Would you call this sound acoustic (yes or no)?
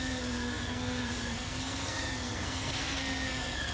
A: no